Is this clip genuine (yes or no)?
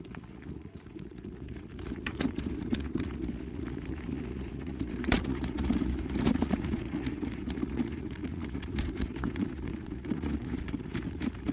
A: no